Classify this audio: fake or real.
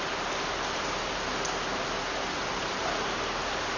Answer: real